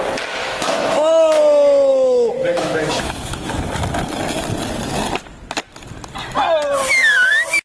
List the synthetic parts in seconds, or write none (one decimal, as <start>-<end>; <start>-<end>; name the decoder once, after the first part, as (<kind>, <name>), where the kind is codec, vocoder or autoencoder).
0.4-1.4 (autoencoder, DAC-VAE); 1.9-3.5